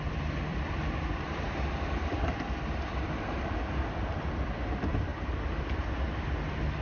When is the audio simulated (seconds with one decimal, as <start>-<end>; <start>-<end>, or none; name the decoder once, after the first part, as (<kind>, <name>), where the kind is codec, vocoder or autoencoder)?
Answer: 0.5-4.6 (vocoder, BigVGAN v2)